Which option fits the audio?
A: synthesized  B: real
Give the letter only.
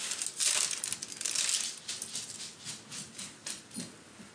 B